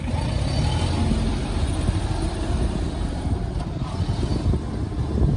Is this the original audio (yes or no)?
yes